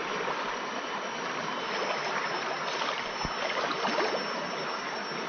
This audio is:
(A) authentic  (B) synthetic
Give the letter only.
A